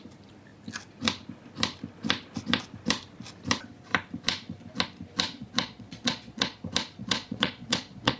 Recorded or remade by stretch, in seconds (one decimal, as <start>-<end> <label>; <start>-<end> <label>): 0.0-5.4 recorded; 5.4-6.6 remade; 6.6-7.0 recorded; 7.0-8.2 remade